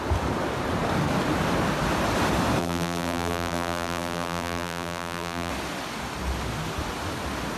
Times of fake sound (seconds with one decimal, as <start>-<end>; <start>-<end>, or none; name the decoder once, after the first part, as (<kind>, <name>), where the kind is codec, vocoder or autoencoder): 2.6-5.5 (vocoder, BigVGAN v2)